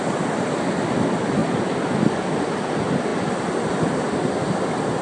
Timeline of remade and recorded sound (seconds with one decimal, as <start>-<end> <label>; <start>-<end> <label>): 0.0-1.4 recorded; 1.4-2.6 remade; 2.6-5.0 recorded